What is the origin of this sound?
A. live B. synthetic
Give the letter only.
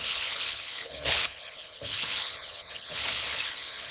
B